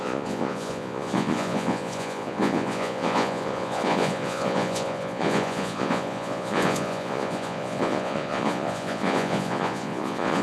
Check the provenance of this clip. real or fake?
fake